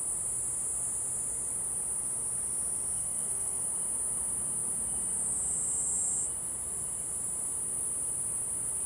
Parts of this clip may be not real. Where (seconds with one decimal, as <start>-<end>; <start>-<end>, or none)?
3.0-3.6